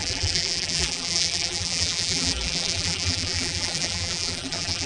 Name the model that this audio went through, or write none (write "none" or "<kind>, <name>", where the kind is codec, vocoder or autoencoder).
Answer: vocoder, BigVGAN v2